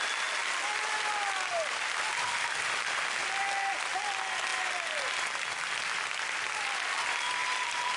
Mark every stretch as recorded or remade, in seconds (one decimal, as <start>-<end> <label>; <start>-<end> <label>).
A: 0.0-1.5 recorded; 1.5-2.1 remade; 2.1-8.0 recorded